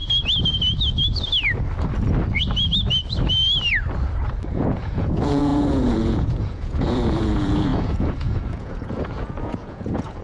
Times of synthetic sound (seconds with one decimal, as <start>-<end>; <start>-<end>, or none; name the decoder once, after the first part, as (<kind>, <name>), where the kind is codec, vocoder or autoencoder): 4.5-10.2 (vocoder, Vocos)